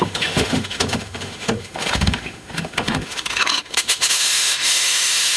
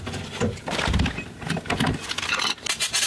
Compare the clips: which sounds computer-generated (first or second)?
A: first